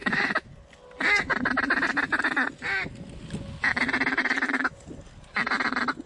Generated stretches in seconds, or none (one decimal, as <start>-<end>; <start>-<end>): 0.0-0.5